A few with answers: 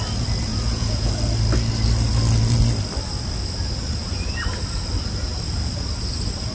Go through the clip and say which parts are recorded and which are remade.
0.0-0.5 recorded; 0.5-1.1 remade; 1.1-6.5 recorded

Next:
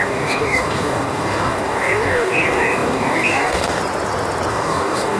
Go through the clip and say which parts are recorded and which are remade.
0.0-3.8 remade; 3.8-4.5 recorded; 4.5-5.2 remade

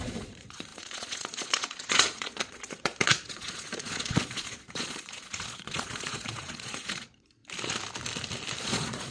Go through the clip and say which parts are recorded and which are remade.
0.0-7.4 remade; 7.4-8.6 recorded; 8.6-9.1 remade

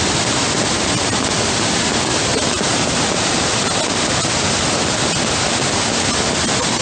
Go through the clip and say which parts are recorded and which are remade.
0.0-2.3 recorded; 2.3-3.5 remade; 3.5-6.8 recorded